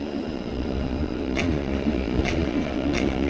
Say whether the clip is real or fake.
fake